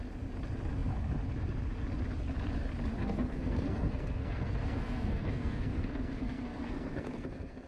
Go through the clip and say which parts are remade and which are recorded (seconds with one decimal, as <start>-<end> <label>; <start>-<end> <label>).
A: 0.0-3.0 recorded; 3.0-7.7 remade